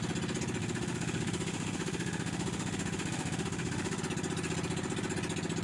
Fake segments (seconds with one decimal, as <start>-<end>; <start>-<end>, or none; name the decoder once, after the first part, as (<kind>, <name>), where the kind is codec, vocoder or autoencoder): 0.6-4.0 (autoencoder, DAC-VAE)